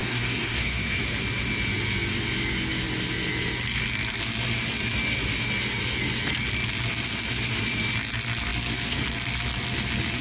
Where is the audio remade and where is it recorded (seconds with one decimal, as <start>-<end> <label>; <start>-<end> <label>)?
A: 0.0-1.0 remade; 1.0-10.2 recorded